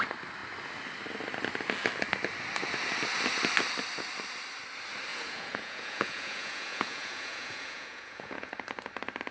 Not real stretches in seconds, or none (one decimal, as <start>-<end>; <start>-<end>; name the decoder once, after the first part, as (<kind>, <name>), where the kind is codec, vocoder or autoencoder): 5.1-8.5 (vocoder, Vocos)